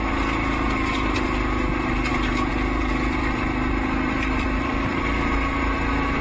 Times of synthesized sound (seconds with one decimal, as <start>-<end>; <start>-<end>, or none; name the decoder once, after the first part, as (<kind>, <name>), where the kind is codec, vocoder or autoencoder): 2.5-5.0 (vocoder, BigVGAN v2)